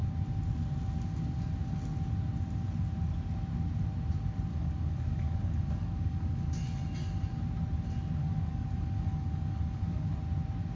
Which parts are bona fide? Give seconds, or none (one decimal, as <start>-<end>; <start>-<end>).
0.0-4.5; 6.6-8.2; 10.1-10.8

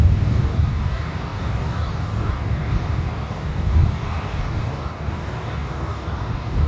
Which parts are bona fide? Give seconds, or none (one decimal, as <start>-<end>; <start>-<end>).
none

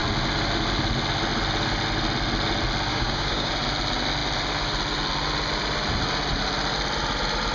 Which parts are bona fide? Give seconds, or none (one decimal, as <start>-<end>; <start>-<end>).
0.0-2.9; 3.5-7.5

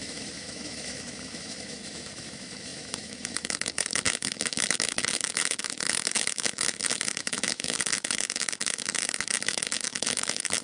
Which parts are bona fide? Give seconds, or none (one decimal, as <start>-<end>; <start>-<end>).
none

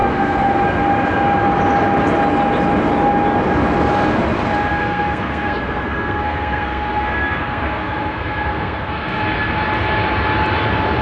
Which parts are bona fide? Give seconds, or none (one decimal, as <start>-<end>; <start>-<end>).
0.5-4.7; 9.2-11.0

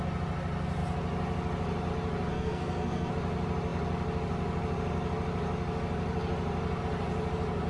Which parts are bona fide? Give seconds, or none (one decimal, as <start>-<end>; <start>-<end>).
0.0-2.3; 3.1-7.7